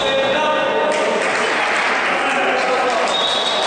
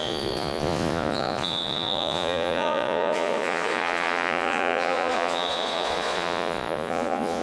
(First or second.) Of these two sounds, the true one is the first